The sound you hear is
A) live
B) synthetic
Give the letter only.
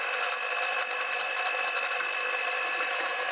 A